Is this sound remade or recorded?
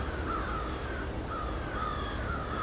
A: recorded